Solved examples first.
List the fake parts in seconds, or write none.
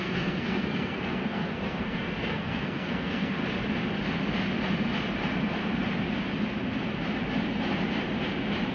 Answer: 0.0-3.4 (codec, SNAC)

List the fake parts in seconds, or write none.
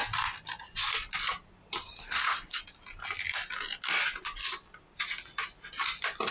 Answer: 2.0-2.6 (codec, SNAC)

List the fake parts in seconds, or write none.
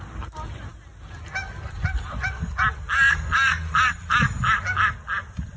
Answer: none